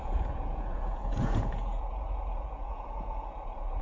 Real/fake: fake